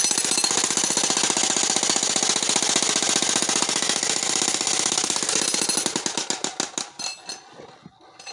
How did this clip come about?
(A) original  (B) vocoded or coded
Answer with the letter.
A